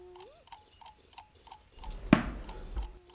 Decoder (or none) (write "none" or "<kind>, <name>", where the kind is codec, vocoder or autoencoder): none